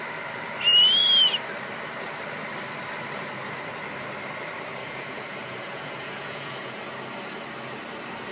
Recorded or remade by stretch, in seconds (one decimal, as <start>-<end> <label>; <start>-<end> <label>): 0.0-4.8 recorded; 4.8-6.8 remade; 6.8-8.3 recorded